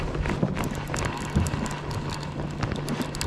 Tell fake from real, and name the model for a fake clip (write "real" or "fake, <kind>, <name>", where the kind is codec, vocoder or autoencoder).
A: real